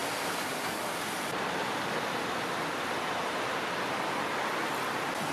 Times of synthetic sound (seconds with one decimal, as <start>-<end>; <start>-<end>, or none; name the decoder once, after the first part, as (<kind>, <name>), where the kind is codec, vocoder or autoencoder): 0.0-3.2 (vocoder, BigVGAN v2)